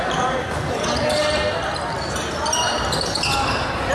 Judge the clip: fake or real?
real